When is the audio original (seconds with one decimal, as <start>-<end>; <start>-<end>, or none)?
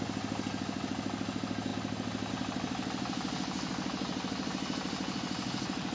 0.0-5.9